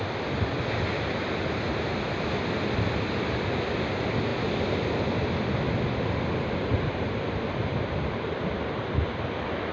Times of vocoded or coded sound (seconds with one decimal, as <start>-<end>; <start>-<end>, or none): none